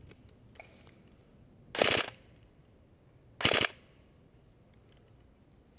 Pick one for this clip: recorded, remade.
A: recorded